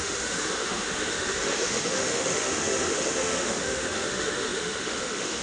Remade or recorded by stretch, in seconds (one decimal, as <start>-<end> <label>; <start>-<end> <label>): 0.0-5.4 remade

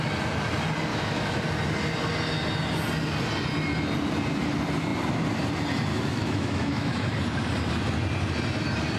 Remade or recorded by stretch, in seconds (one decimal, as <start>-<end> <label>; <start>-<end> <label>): 0.0-0.9 recorded; 0.9-1.4 remade; 1.4-5.9 recorded; 5.9-7.1 remade; 7.1-9.0 recorded

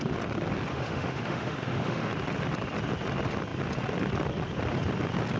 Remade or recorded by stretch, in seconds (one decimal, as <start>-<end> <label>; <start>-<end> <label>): 0.0-0.7 recorded; 0.7-2.1 remade; 2.1-5.4 recorded

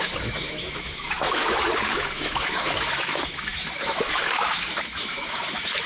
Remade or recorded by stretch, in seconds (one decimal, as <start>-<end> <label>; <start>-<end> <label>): 0.0-5.9 remade